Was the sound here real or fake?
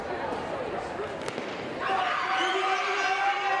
real